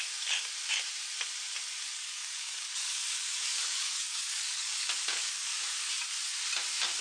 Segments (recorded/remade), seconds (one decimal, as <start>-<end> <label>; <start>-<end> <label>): 0.0-1.9 recorded; 1.9-6.0 remade; 6.0-7.0 recorded